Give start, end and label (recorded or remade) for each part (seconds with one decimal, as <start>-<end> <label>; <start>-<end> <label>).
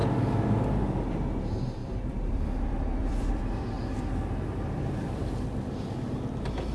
0.0-1.8 recorded; 1.8-3.4 remade; 3.4-4.5 recorded; 4.5-5.9 remade; 5.9-6.7 recorded